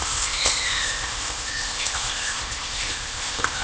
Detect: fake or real fake